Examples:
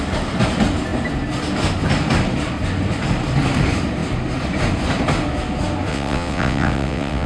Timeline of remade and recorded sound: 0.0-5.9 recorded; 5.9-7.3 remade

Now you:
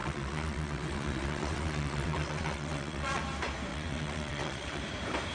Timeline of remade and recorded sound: 0.0-3.2 remade; 3.2-3.7 recorded; 3.7-4.8 remade; 4.8-5.3 recorded

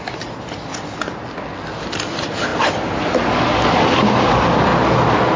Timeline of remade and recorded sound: 0.0-5.4 recorded